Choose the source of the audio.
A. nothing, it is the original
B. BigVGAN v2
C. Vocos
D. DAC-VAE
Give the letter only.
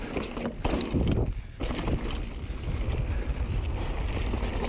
A